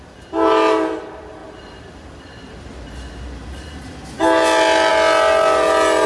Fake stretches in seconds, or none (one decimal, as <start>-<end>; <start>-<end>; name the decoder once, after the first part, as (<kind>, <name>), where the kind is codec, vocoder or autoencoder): none